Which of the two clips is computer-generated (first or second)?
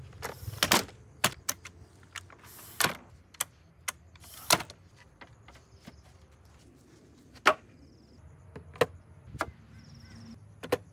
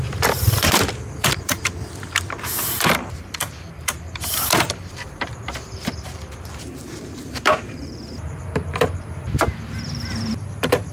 second